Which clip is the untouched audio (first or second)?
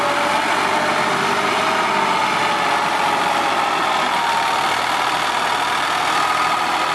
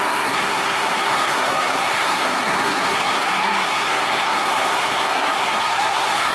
first